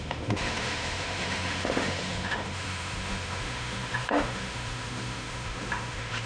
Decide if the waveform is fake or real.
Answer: fake